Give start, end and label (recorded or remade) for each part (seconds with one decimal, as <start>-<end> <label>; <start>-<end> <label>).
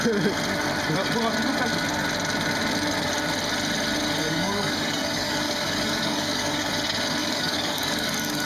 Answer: 0.0-4.2 recorded; 4.2-6.7 remade; 6.7-7.2 recorded; 7.2-8.5 remade